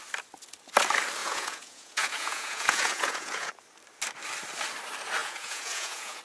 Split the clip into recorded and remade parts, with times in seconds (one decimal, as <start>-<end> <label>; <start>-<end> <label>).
0.0-1.2 recorded; 1.2-3.5 remade; 3.5-5.2 recorded; 5.2-6.2 remade